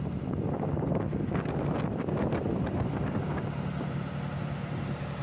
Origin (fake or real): real